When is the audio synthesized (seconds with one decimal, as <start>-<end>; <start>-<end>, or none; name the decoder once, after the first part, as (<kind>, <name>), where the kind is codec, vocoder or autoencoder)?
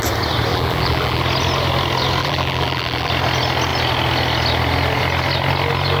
0.5-1.2 (vocoder, BigVGAN v2); 2.2-3.1